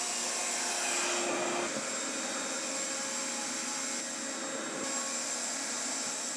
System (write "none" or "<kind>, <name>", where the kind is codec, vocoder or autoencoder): none